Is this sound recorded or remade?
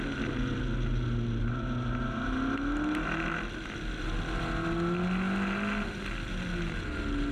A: recorded